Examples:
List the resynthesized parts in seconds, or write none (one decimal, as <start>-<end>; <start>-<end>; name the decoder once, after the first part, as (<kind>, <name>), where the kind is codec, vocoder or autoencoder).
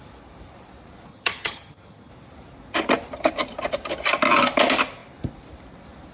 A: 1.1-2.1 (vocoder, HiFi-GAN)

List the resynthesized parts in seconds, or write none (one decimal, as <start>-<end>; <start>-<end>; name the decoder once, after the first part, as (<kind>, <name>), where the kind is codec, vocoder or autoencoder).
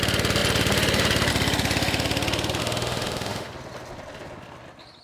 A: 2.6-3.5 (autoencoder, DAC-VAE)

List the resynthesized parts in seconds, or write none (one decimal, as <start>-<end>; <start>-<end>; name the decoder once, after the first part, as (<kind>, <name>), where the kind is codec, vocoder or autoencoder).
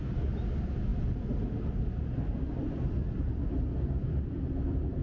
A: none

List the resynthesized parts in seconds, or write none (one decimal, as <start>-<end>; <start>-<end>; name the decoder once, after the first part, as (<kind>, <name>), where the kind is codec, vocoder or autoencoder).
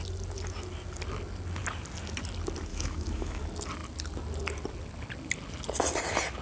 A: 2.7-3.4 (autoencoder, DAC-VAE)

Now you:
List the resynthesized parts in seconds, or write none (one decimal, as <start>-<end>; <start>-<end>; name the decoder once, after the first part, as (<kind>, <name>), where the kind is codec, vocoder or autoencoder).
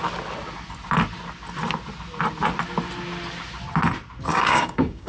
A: 4.3-5.1 (codec, DAC)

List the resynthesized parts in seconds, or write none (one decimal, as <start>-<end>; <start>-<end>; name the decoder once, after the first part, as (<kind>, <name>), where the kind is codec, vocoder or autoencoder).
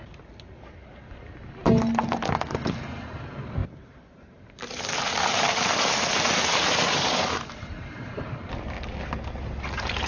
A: 3.6-8.5 (vocoder, BigVGAN v2)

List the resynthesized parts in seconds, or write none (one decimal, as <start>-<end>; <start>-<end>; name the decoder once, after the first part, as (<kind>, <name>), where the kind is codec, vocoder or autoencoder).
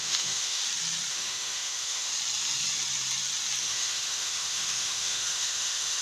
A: 0.0-0.6 (autoencoder, DAC-VAE); 1.1-2.1; 3.6-6.0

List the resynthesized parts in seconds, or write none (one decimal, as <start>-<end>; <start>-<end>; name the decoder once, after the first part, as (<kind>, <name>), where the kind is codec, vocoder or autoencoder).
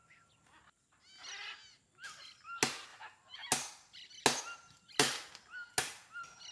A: none